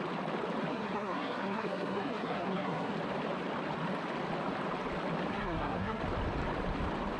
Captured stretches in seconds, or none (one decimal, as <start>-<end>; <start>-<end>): 0.0-0.7; 2.9-5.3; 6.0-7.2